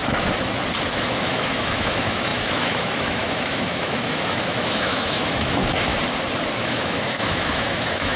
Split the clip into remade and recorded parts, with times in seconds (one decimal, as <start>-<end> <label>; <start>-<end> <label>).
0.0-0.9 recorded; 0.9-5.9 remade; 5.9-6.6 recorded; 6.6-8.2 remade